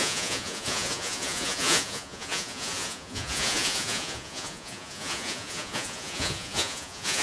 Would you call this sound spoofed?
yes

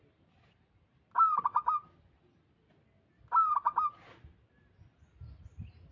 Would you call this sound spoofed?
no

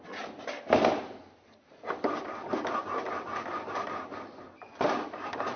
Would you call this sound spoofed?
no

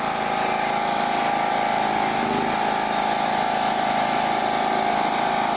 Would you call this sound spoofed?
no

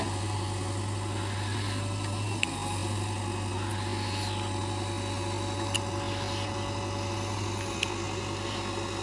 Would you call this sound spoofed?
no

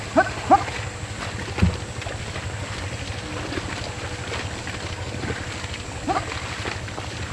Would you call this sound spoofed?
no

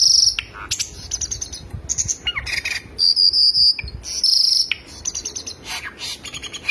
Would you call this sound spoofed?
no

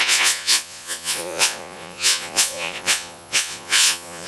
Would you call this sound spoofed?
yes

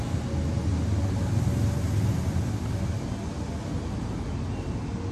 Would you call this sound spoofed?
no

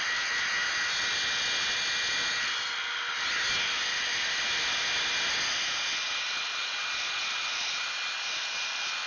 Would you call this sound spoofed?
no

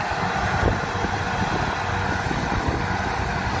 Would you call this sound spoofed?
no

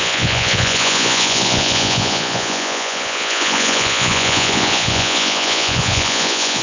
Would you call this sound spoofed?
yes